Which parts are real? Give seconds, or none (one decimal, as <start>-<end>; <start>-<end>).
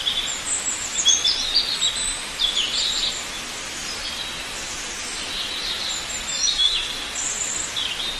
0.0-6.3; 6.9-8.2